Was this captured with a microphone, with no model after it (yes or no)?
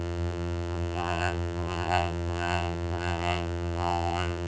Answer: no